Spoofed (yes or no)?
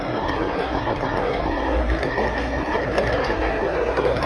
yes